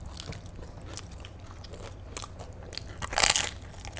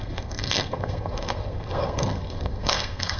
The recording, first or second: first